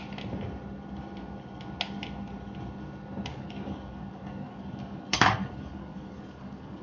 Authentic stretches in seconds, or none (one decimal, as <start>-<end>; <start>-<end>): 0.0-3.3